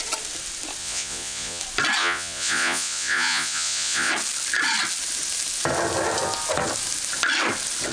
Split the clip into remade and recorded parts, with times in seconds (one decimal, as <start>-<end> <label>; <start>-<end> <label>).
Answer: 0.0-0.8 recorded; 0.8-1.6 remade; 1.6-2.0 recorded; 2.0-4.1 remade; 4.1-7.9 recorded